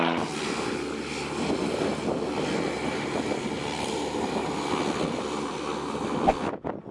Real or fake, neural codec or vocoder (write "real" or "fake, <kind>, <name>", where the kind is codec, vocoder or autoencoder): real